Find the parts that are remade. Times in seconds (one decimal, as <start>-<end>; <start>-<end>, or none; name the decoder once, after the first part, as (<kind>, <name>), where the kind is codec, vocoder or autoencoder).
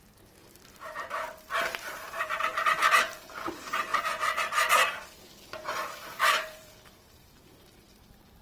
0.0-3.9 (vocoder, BigVGAN v2); 4.7-8.4